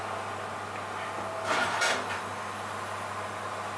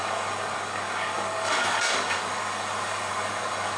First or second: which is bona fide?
first